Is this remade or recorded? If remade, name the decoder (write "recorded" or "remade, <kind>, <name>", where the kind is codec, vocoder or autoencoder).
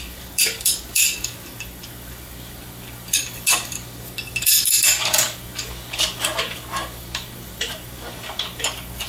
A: remade, codec, DAC